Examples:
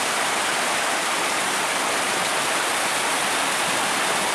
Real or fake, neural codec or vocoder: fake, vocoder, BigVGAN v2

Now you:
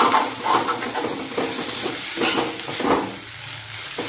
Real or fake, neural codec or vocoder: real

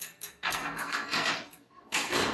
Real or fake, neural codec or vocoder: fake, codec, SNAC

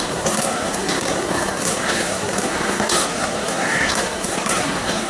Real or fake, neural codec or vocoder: fake, codec, SNAC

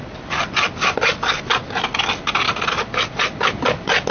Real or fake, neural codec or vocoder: real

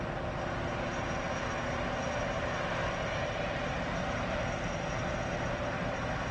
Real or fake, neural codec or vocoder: real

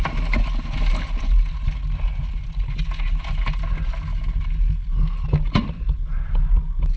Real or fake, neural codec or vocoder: real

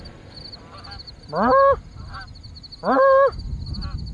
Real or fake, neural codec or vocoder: real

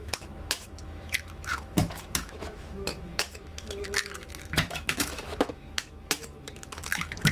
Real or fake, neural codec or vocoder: fake, autoencoder, DAC-VAE